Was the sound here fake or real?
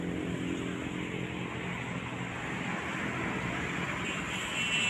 real